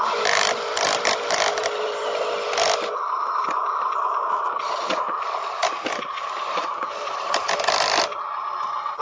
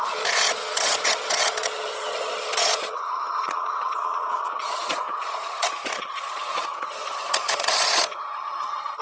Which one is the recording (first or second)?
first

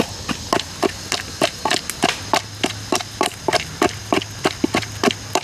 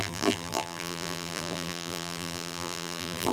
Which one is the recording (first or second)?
first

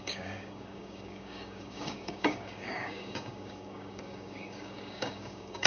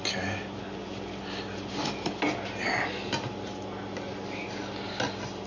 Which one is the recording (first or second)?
second